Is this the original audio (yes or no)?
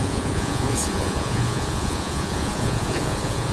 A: no